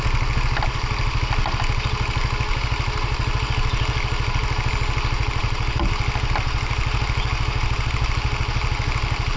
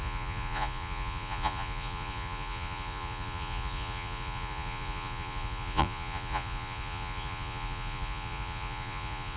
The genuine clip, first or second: first